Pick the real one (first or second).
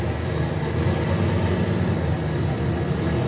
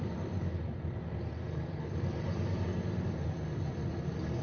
first